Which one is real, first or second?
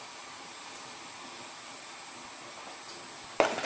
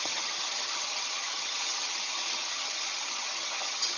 first